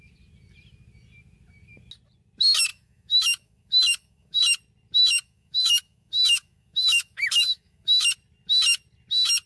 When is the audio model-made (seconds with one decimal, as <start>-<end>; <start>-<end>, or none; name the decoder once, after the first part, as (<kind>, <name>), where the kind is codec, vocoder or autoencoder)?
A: 2.7-4.4 (autoencoder, DAC-VAE); 5.0-8.1